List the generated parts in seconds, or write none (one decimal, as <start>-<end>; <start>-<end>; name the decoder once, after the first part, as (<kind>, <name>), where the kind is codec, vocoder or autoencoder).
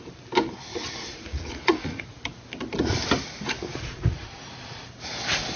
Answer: 0.7-2.4 (vocoder, Vocos); 3.7-4.8